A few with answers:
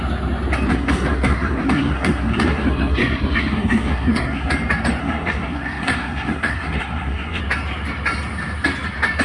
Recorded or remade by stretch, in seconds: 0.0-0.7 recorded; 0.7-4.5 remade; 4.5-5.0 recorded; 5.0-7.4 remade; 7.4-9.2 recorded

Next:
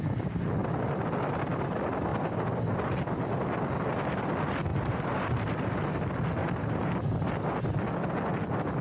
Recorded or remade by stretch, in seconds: 0.0-4.7 recorded; 4.7-6.0 remade; 6.0-6.4 recorded; 6.4-6.9 remade; 6.9-8.8 recorded